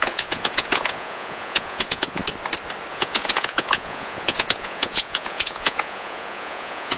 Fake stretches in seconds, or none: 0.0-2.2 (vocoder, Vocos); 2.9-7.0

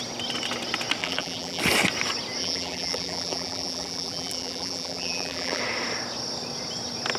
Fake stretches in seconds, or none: 1.0-1.6 (vocoder, BigVGAN v2); 2.4-5.6